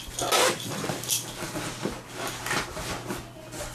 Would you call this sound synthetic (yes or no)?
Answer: no